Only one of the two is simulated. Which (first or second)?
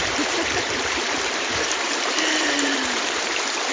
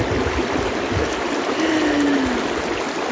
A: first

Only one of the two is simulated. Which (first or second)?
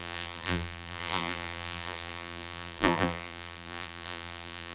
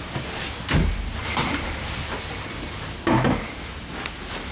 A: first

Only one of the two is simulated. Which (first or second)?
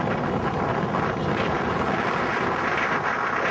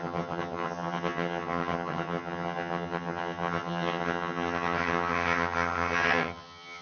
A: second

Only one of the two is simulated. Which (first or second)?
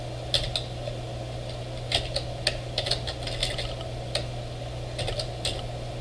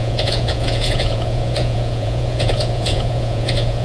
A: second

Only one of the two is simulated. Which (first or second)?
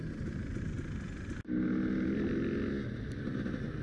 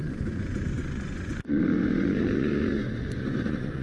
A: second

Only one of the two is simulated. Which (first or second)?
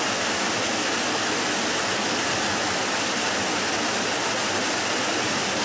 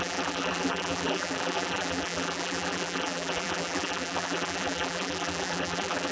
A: second